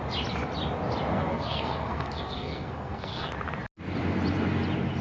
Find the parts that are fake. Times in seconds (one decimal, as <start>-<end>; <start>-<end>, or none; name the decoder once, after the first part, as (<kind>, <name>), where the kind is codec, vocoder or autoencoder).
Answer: 1.1-3.3 (codec, SNAC)